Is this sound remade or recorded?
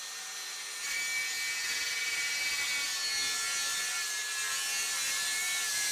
recorded